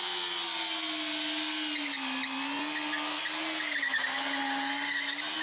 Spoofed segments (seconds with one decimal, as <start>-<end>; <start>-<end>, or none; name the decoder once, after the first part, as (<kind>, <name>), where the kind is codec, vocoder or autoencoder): none